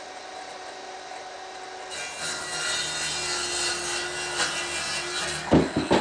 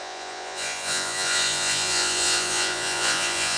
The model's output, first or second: second